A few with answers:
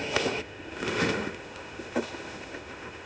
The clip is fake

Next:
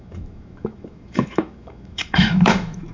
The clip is fake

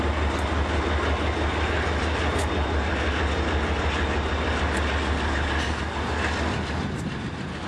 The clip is real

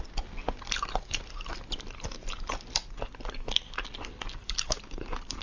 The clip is real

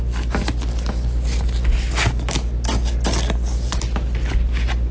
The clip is real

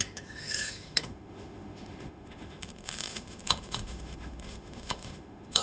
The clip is fake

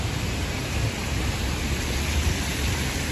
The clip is real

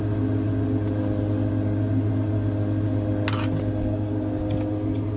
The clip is real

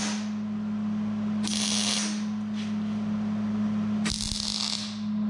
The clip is real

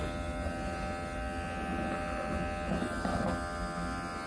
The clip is real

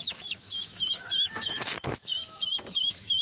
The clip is fake